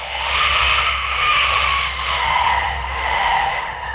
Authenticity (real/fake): fake